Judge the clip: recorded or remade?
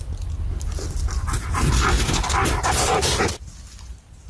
recorded